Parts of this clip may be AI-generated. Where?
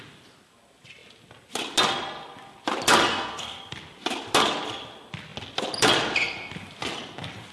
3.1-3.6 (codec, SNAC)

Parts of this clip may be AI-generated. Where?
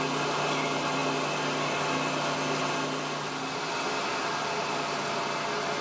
none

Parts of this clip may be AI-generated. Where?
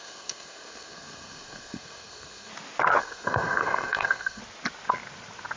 0.0-2.5 (codec, SNAC); 3.0-4.4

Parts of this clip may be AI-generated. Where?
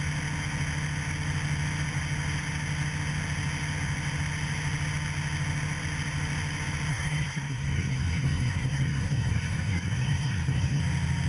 6.9-10.8 (codec, SNAC)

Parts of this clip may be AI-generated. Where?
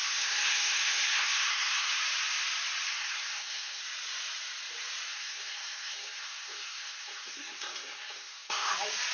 0.0-1.9 (codec, SNAC); 2.9-3.8; 5.1-8.7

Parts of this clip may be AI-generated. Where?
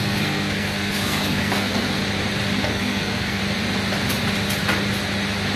0.0-2.0 (codec, SNAC); 2.6-3.4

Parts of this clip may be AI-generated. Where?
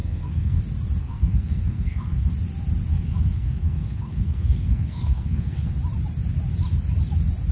0.0-0.6 (codec, SNAC); 1.0-2.3; 2.9-5.7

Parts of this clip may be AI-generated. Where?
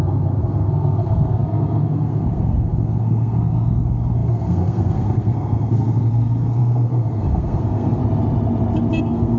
0.0-8.0 (codec, SNAC); 9.0-9.4